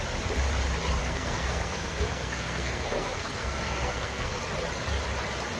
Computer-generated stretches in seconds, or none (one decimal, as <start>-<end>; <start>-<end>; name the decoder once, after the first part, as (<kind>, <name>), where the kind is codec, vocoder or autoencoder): 1.0-4.4 (codec, SNAC)